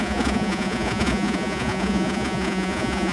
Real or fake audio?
fake